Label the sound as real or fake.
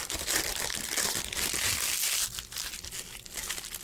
real